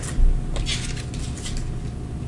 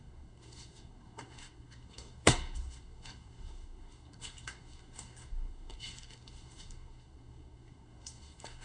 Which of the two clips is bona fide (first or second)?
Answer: first